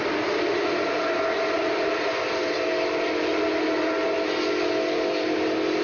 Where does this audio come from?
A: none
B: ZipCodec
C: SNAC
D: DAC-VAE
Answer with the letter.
A